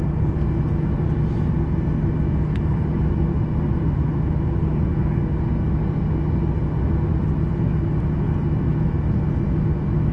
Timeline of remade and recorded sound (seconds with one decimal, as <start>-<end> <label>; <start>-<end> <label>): 0.0-10.1 recorded

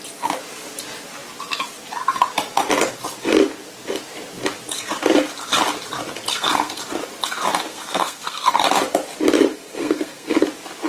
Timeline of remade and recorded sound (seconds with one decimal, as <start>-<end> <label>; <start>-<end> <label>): 0.0-6.3 recorded; 6.3-6.8 remade; 6.8-7.7 recorded; 7.7-8.5 remade; 8.5-9.5 recorded; 9.5-10.4 remade; 10.4-10.9 recorded

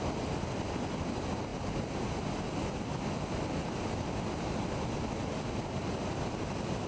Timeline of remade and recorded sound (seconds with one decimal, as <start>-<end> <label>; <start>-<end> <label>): 0.0-6.9 recorded

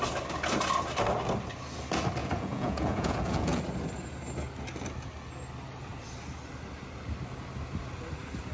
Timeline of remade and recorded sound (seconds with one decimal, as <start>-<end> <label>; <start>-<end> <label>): 0.0-2.2 recorded; 2.2-3.6 remade; 3.6-8.5 recorded

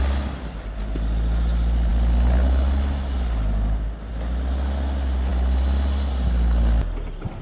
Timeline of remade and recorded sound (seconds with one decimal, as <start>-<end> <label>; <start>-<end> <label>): 0.0-7.4 recorded

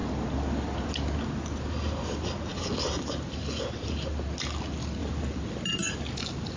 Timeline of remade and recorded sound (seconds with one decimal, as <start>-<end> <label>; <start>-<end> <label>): 0.0-6.6 recorded